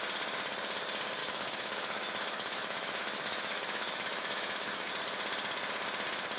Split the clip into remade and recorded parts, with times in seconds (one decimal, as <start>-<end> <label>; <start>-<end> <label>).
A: 0.0-1.2 recorded; 1.2-4.9 remade; 4.9-6.4 recorded